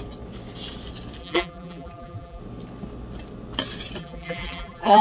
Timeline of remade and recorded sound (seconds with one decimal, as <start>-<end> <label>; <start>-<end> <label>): 0.0-1.2 recorded; 1.2-2.4 remade; 2.4-4.0 recorded; 4.0-5.0 remade